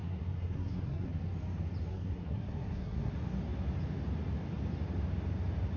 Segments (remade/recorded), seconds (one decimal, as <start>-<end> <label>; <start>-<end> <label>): 0.0-1.1 remade; 1.1-1.9 recorded; 1.9-3.1 remade; 3.1-5.8 recorded